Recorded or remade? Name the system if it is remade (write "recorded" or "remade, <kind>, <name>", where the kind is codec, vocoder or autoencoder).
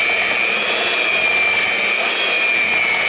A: recorded